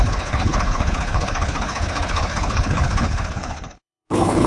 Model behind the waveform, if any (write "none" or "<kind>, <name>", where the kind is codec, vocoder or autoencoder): codec, HILCodec